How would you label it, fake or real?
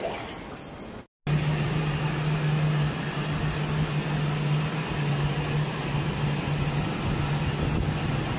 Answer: real